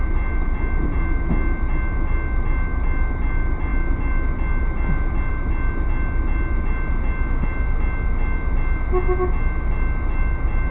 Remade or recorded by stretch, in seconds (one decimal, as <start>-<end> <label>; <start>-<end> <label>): 0.0-10.7 recorded